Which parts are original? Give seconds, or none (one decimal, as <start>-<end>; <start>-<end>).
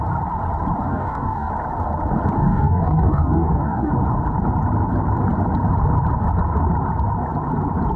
0.0-0.9; 1.5-2.4; 3.9-8.0